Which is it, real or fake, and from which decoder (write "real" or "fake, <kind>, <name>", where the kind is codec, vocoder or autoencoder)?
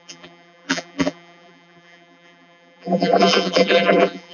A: fake, vocoder, BigVGAN v2